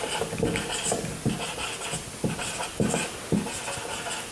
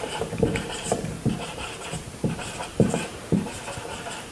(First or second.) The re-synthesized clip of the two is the second